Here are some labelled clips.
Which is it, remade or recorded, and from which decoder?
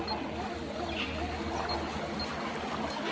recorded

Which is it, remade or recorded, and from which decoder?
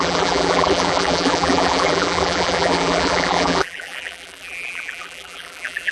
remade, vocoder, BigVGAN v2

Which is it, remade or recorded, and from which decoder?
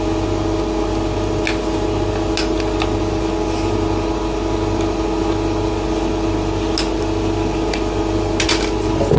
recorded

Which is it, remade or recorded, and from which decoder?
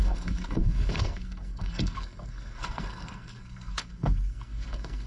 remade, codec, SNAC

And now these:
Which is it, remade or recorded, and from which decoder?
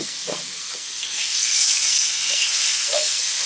remade, codec, SNAC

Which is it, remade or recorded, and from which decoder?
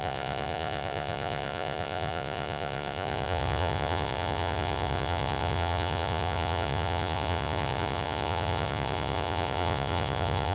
remade, vocoder, Vocos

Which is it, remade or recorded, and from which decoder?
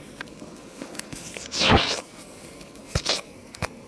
remade, codec, SNAC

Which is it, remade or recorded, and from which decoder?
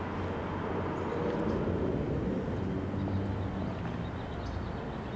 recorded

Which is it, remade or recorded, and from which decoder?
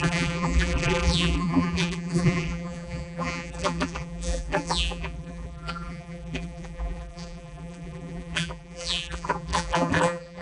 remade, vocoder, BigVGAN v2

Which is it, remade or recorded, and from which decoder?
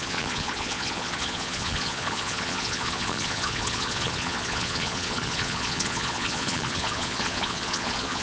remade, vocoder, Vocos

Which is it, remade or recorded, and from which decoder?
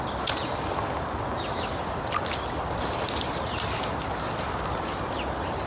recorded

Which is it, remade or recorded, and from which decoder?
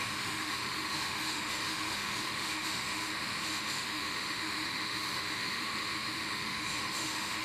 remade, autoencoder, DAC-VAE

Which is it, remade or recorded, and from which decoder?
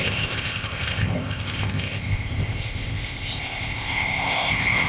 remade, codec, ZipCodec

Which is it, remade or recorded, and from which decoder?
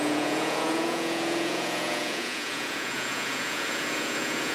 remade, vocoder, Vocos